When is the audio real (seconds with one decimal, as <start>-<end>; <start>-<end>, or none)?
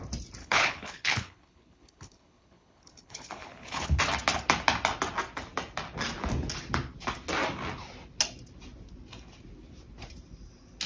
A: 0.0-0.4; 4.0-10.9